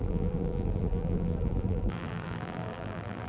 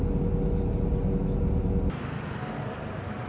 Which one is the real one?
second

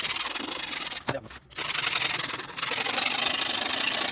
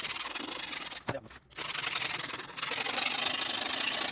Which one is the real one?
second